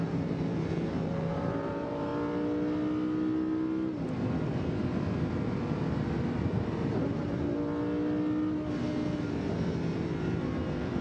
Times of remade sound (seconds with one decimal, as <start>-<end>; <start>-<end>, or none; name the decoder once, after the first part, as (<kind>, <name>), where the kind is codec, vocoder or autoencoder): 0.0-2.1 (vocoder, BigVGAN v2); 6.4-7.3; 9.5-11.0